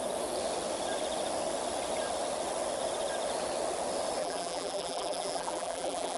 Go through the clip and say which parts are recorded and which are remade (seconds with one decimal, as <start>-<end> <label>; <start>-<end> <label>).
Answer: 0.0-4.2 recorded; 4.2-6.2 remade